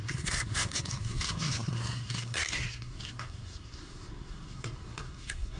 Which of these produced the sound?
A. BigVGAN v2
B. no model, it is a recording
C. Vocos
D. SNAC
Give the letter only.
D